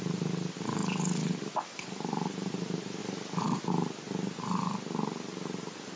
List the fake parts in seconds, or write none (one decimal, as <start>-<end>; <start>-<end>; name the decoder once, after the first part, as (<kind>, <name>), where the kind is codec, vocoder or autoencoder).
none